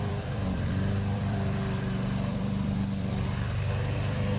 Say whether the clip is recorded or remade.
remade